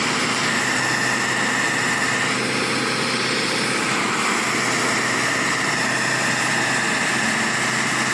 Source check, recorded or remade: recorded